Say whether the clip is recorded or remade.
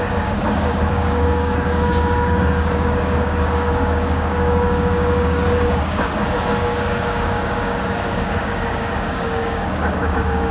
remade